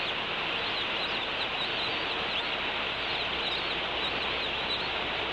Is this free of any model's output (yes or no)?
yes